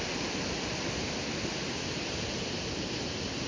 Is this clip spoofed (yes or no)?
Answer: no